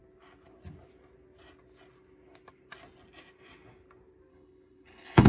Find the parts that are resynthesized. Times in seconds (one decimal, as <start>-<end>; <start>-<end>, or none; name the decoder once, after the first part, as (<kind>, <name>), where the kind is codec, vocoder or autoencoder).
4.3-5.3 (codec, HILCodec)